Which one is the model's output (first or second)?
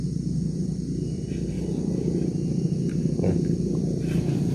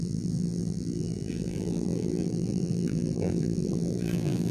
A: second